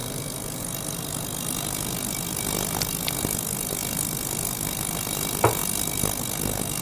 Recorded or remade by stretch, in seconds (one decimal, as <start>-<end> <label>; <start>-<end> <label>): 0.0-6.8 recorded